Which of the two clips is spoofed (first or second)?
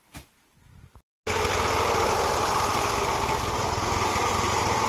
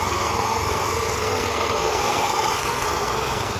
second